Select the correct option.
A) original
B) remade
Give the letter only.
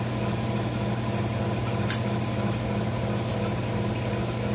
A